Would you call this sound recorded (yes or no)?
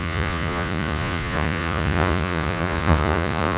no